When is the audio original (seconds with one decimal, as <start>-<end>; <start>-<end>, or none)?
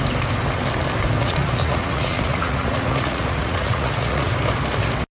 0.0-1.2; 4.3-5.1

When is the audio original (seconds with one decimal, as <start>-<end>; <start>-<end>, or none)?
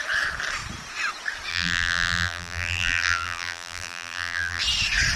0.0-1.5; 4.6-5.2